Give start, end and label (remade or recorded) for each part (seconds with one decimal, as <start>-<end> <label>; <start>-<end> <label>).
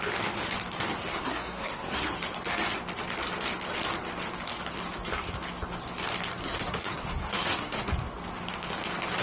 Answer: 0.0-1.1 recorded; 1.1-2.2 remade; 2.2-6.4 recorded; 6.4-7.9 remade; 7.9-9.2 recorded